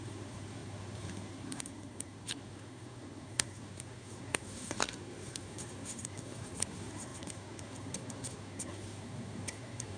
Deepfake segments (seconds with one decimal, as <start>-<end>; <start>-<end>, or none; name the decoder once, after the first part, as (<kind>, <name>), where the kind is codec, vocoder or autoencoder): 0.0-10.0 (codec, SNAC)